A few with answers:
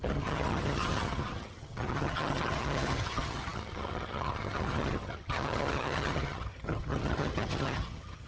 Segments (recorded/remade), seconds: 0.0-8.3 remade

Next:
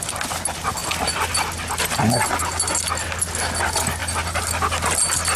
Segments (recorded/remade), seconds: 0.0-5.4 recorded

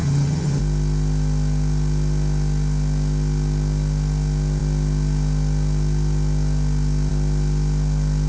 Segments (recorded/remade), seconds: 0.0-0.6 remade; 0.6-8.3 recorded

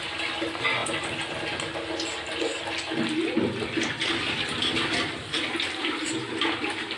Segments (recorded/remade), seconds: 0.0-7.0 recorded

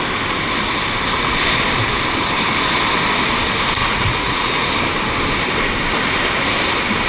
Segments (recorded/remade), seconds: 0.0-3.8 recorded; 3.8-4.7 remade; 4.7-7.1 recorded